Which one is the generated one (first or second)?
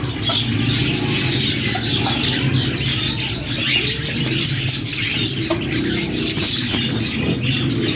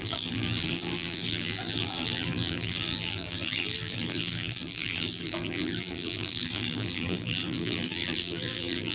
second